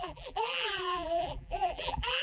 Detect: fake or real fake